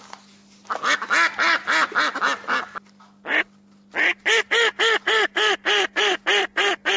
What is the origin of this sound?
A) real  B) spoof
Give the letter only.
A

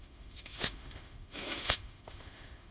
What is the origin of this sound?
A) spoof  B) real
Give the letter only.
A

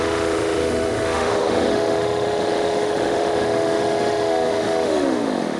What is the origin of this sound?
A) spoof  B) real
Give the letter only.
A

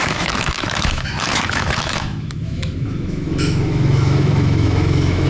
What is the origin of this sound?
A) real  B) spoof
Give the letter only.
B